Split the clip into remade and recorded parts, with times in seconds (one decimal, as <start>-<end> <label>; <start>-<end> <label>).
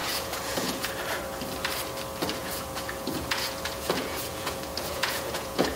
0.0-0.9 remade; 0.9-2.4 recorded; 2.4-5.8 remade